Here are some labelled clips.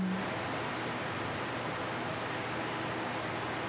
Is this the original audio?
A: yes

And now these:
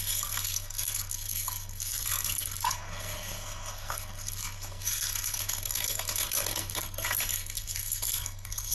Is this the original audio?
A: no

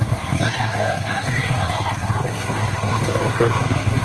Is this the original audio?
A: no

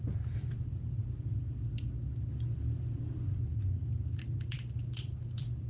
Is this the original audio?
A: yes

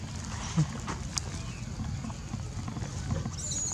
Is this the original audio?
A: yes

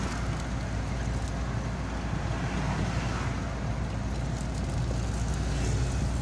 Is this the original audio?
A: yes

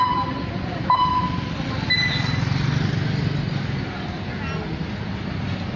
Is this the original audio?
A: yes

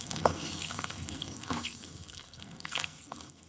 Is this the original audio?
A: no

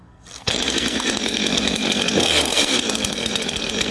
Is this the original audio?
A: no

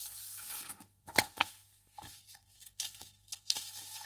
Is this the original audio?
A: no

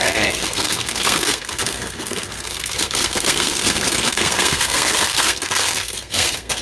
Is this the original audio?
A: no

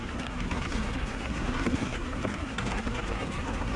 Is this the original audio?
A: no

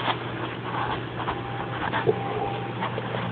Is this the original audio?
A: yes